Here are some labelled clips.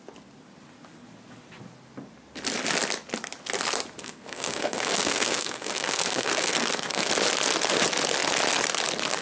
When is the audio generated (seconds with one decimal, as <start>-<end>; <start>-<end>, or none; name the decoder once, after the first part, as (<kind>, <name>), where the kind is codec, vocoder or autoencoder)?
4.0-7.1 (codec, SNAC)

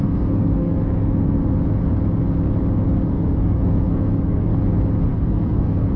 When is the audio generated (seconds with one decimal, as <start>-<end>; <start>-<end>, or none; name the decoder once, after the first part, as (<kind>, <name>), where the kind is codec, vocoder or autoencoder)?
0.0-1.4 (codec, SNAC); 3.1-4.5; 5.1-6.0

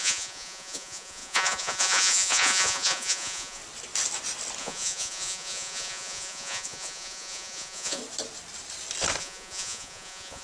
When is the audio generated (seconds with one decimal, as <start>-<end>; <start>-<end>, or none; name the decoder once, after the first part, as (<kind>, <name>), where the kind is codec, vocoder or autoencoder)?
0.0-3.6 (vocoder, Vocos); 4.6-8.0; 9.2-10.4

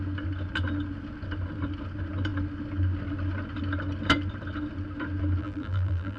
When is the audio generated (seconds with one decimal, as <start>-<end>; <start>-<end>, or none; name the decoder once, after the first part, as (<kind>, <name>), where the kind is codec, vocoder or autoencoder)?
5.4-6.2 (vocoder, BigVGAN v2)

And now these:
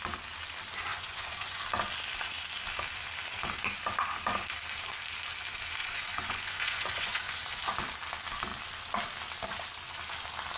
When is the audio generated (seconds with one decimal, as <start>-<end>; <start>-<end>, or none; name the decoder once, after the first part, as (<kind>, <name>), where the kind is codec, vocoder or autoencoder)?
0.9-1.6 (vocoder, Vocos); 5.8-7.4